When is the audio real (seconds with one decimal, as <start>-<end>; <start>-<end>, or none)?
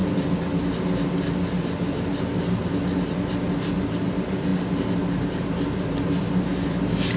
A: 0.0-7.2